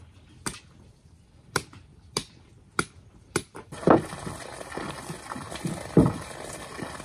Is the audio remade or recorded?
recorded